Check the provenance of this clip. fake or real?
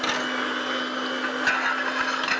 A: real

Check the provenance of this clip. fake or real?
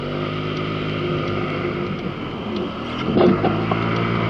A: real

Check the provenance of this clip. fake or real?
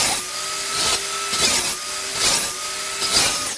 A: real